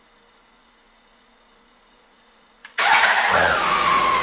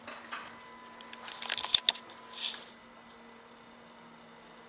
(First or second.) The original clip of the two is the second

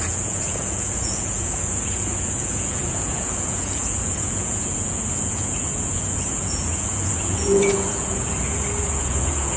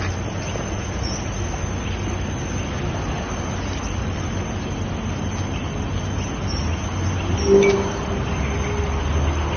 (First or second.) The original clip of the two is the second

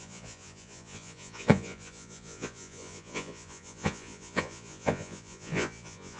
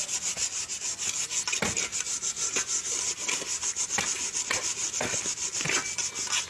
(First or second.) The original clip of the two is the second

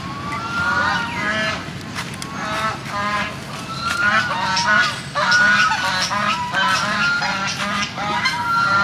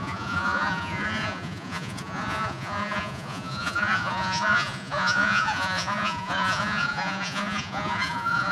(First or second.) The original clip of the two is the first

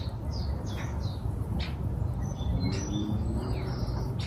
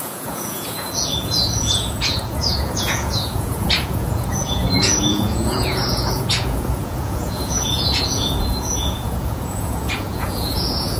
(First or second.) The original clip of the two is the first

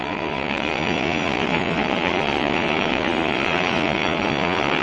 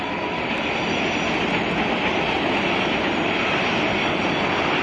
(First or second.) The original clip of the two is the second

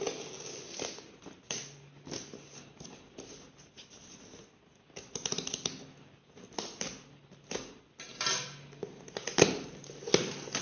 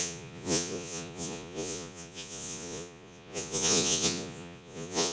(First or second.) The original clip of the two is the first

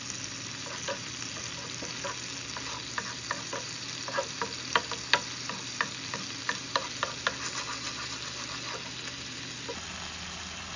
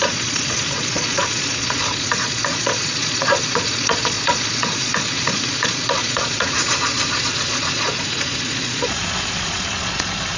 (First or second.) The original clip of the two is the first